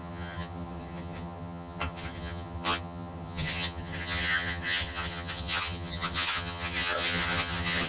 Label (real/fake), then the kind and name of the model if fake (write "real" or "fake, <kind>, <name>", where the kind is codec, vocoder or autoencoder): fake, vocoder, HiFi-GAN